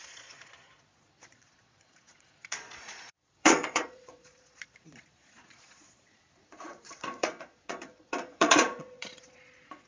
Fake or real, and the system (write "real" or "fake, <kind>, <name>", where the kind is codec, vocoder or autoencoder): fake, vocoder, Vocos